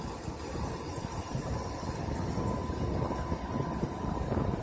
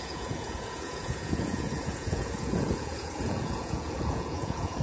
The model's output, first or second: second